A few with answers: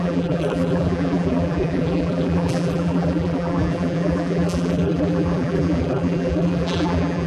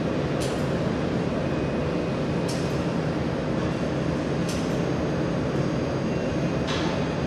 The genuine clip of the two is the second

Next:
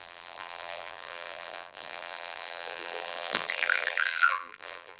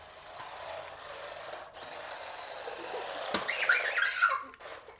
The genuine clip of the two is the second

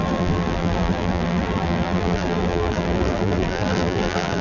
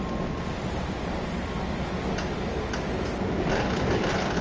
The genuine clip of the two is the second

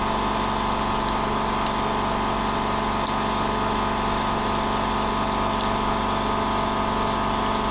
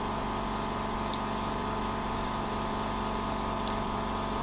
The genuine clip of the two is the first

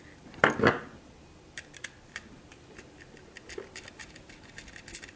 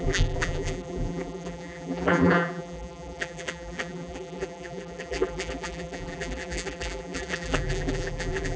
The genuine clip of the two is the first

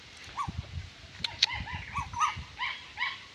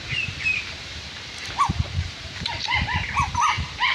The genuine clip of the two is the first